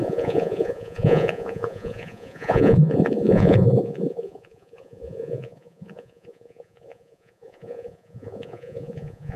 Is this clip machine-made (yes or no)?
yes